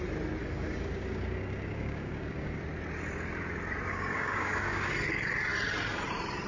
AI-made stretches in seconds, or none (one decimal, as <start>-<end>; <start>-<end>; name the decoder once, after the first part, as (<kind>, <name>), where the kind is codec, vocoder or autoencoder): 0.4-2.6 (codec, DAC); 3.9-4.9

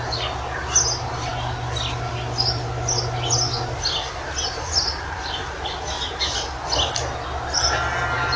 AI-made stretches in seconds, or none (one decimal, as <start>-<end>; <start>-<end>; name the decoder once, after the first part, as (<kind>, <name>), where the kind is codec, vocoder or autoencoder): none

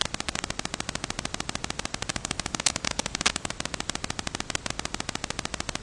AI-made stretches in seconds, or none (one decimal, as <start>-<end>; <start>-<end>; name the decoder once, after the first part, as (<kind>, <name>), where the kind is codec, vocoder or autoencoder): 2.1-3.5 (codec, DAC)